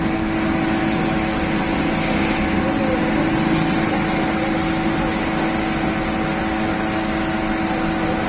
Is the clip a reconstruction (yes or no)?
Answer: no